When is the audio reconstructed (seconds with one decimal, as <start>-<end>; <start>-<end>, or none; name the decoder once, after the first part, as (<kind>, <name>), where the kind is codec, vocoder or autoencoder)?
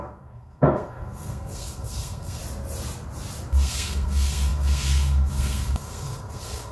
0.0-2.4 (codec, SNAC); 3.5-6.7